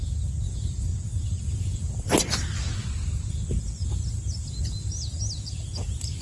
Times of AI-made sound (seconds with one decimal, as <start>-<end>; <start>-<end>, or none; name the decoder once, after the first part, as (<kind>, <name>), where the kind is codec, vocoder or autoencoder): none